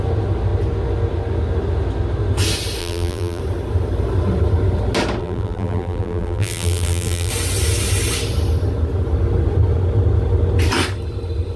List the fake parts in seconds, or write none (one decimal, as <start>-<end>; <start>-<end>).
2.8-3.4; 5.2-7.3